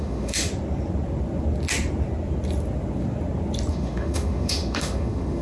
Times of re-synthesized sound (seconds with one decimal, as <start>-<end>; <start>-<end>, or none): 0.0-0.5; 3.7-5.4